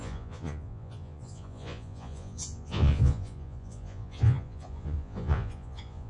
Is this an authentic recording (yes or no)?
no